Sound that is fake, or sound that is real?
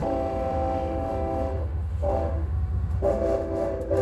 fake